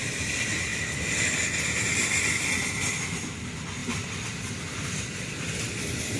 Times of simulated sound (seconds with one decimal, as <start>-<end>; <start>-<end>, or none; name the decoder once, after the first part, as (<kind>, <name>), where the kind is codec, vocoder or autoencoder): 3.8-4.5 (vocoder, BigVGAN v2)